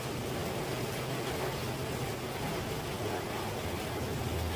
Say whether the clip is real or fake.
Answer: real